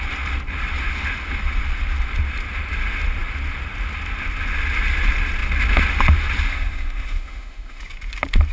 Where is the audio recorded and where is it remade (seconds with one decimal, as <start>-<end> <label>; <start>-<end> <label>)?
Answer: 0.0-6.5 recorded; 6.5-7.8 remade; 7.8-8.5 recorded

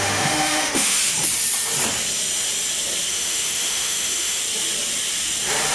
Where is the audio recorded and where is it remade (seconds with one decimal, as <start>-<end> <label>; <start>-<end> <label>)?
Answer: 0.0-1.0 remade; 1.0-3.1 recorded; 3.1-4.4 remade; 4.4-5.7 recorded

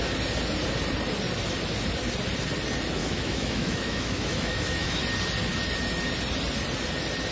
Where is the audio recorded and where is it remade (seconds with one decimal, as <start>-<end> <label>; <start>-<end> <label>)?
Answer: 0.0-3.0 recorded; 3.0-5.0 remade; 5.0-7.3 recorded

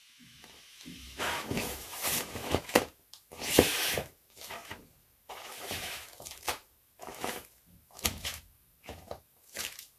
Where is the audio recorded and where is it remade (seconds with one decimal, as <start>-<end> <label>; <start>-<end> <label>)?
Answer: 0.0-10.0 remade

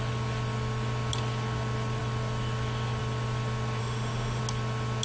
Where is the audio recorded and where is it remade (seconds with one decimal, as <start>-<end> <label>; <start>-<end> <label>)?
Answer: 0.0-3.8 recorded; 3.8-4.4 remade; 4.4-5.0 recorded

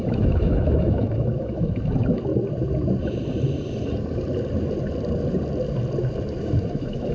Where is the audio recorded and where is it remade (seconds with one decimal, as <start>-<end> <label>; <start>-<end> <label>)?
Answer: 0.0-2.3 remade; 2.3-6.4 recorded; 6.4-7.1 remade

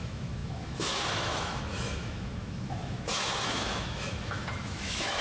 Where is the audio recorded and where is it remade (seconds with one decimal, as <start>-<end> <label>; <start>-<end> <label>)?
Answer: 0.0-5.2 remade

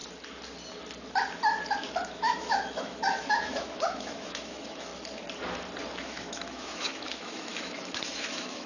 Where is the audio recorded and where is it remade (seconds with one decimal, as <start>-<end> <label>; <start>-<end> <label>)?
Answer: 0.0-1.8 recorded; 1.8-4.9 remade; 4.9-5.9 recorded; 5.9-8.7 remade